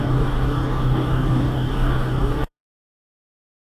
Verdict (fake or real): fake